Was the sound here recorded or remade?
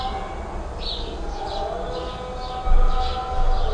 recorded